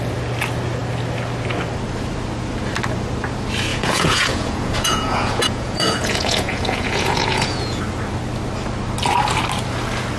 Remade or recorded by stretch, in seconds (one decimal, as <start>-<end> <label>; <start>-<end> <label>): 0.0-3.7 recorded; 3.7-7.8 remade; 7.8-10.2 recorded